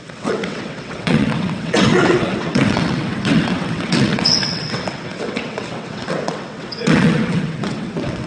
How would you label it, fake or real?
fake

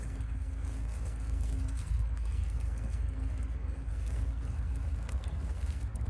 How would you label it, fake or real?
fake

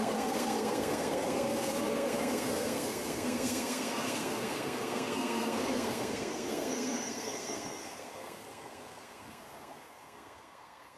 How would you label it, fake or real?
fake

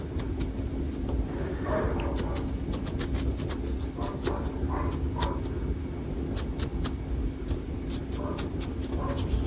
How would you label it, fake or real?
real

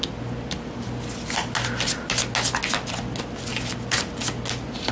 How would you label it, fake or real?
real